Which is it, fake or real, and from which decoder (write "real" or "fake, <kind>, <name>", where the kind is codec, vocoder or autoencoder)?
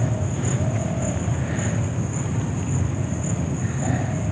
real